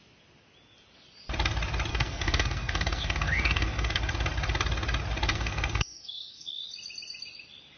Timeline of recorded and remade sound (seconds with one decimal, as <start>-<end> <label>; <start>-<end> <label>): 0.0-1.9 recorded; 1.9-4.0 remade; 4.0-5.3 recorded; 5.3-6.6 remade; 6.6-7.8 recorded